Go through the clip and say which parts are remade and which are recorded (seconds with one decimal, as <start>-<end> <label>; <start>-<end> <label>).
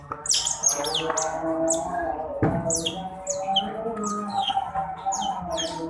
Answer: 0.0-4.1 recorded; 4.1-4.7 remade; 4.7-5.9 recorded